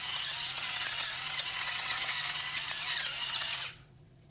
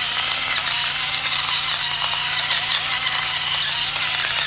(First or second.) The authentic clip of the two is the second